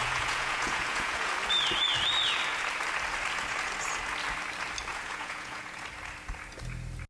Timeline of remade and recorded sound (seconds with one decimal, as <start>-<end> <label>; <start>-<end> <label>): 0.0-1.3 remade; 1.3-4.9 recorded; 4.9-5.8 remade; 5.8-7.1 recorded

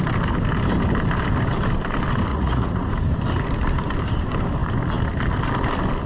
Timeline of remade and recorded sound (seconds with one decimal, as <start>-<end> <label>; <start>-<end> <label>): 0.0-2.3 recorded; 2.3-2.9 remade; 2.9-6.1 recorded

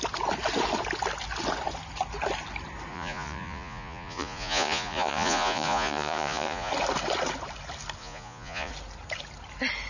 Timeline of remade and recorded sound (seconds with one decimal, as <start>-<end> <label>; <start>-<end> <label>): 0.0-2.9 recorded; 2.9-6.7 remade; 6.7-8.0 recorded; 8.0-8.7 remade; 8.7-9.9 recorded

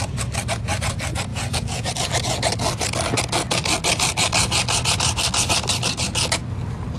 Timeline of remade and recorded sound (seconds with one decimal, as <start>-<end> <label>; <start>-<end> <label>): 0.0-1.3 recorded; 1.3-1.9 remade; 1.9-7.0 recorded

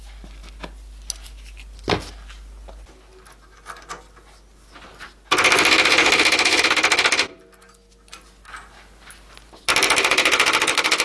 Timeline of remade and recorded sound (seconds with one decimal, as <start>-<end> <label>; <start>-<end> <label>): 0.0-11.0 recorded

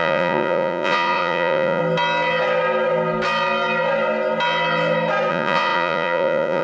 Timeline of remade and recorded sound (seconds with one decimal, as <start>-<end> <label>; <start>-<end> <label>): 0.0-1.8 remade; 1.8-5.3 recorded; 5.3-6.6 remade